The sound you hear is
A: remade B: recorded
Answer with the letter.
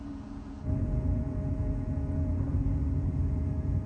A